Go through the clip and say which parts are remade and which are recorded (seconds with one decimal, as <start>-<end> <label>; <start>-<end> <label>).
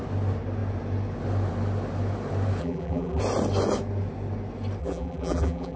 0.0-2.6 recorded; 2.6-3.2 remade; 3.2-4.8 recorded; 4.8-5.8 remade